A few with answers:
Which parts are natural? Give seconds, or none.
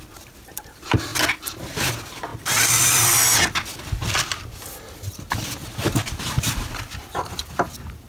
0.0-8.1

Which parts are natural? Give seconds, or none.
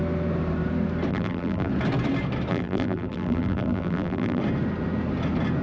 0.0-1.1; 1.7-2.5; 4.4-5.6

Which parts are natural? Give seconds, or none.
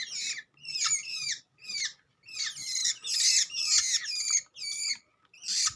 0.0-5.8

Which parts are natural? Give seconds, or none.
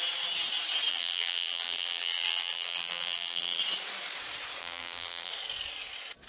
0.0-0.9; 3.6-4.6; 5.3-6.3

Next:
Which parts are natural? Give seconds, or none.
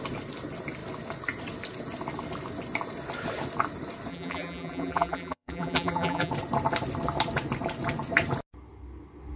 0.0-4.1; 6.3-9.4